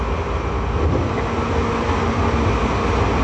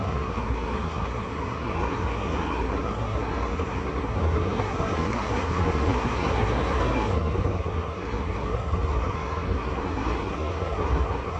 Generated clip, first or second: second